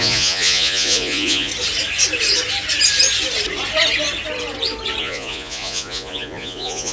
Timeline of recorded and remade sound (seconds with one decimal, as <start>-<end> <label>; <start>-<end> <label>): 0.0-1.5 remade; 1.5-5.0 recorded; 5.0-6.9 remade